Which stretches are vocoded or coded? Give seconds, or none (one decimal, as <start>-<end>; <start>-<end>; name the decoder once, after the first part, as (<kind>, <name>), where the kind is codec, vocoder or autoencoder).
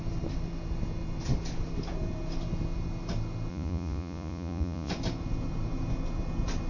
3.5-4.9 (vocoder, Vocos)